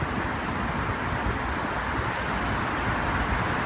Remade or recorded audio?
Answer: recorded